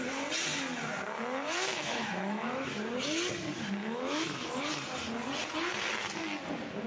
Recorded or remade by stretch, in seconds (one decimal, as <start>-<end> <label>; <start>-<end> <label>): 0.0-1.7 recorded; 1.7-2.7 remade; 2.7-3.8 recorded; 3.8-4.6 remade; 4.6-6.9 recorded